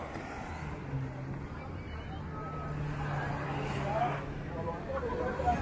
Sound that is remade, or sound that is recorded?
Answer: recorded